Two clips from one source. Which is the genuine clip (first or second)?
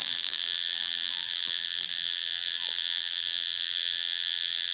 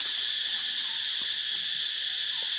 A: second